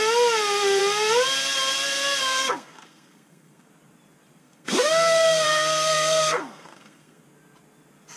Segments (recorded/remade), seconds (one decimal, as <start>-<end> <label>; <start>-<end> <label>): 0.0-2.2 recorded; 2.2-3.7 remade; 3.7-4.4 recorded; 4.4-7.2 remade; 7.2-8.2 recorded